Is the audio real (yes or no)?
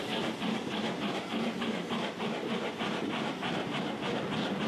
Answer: yes